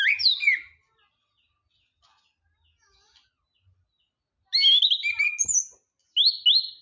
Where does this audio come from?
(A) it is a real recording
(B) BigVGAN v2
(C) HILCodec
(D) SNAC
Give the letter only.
A